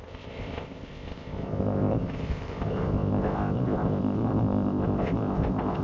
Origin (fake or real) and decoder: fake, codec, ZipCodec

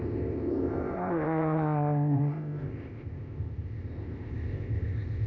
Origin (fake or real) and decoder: fake, codec, ZipCodec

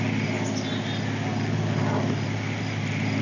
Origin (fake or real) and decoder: real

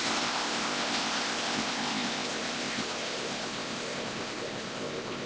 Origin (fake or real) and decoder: fake, codec, ZipCodec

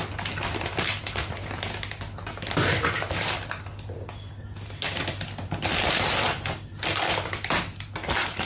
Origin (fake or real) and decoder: real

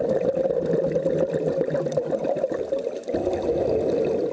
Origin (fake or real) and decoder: real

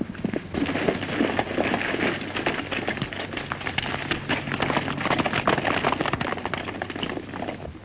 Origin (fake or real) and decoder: real